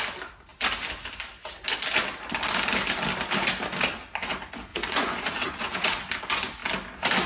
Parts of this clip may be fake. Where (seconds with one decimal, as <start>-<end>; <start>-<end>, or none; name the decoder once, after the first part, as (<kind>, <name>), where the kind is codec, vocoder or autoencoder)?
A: 4.7-6.1 (vocoder, Vocos)